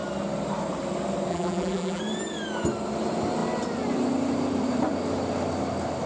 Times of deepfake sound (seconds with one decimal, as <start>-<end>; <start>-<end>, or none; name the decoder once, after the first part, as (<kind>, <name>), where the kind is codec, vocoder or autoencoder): 1.3-2.0 (vocoder, BigVGAN v2)